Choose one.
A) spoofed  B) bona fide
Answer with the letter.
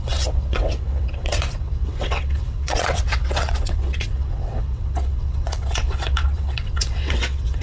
A